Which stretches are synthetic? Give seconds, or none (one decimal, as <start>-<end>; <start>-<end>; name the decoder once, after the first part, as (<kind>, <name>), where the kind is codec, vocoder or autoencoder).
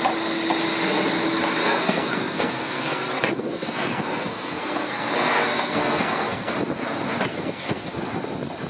1.6-6.5 (codec, SNAC); 7.3-8.2